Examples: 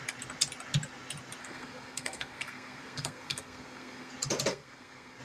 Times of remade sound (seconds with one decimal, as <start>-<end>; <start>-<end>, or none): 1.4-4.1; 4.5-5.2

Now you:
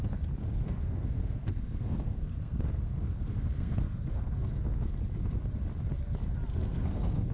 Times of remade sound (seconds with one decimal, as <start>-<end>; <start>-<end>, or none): 0.4-4.8; 6.5-7.3

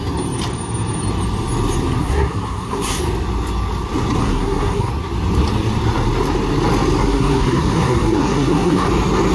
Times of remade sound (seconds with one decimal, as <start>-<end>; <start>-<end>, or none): 2.0-3.0; 4.2-4.9; 7.0-8.9

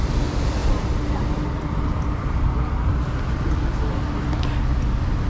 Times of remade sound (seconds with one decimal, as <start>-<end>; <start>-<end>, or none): none